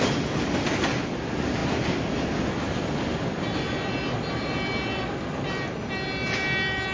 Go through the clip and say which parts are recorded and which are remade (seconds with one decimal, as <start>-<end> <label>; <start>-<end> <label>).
0.0-6.9 recorded